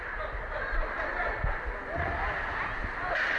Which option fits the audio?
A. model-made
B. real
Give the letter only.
B